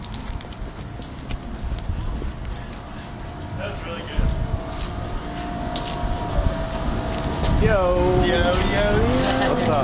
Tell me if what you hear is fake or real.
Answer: real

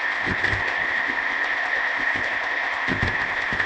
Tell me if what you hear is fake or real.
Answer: fake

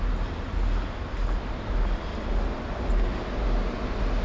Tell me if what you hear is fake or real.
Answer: real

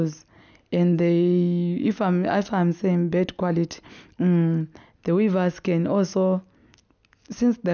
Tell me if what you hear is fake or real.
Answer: real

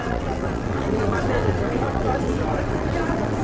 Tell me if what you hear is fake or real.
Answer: fake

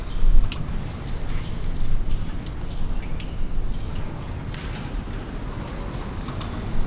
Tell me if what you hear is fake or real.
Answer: real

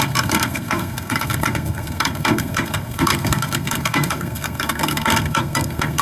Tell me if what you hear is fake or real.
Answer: fake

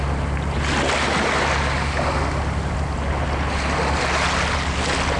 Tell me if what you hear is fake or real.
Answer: real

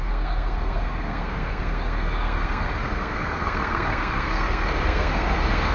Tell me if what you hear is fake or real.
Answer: fake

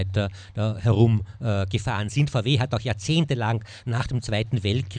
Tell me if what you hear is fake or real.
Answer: real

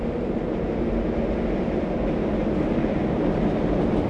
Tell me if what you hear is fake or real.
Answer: real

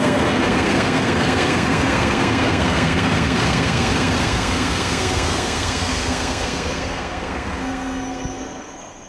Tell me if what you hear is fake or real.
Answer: fake